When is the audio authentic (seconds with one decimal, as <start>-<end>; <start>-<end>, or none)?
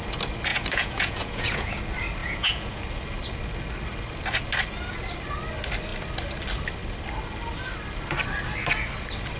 0.0-0.5; 1.7-2.2; 2.8-9.4